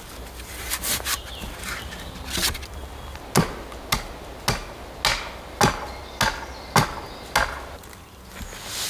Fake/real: real